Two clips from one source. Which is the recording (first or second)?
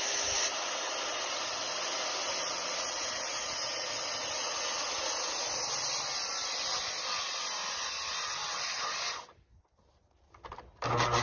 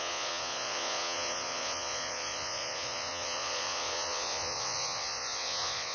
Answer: first